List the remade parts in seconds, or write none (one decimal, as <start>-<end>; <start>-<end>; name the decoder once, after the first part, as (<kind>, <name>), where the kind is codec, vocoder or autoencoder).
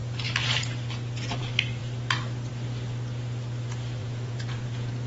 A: 4.0-5.1 (vocoder, Vocos)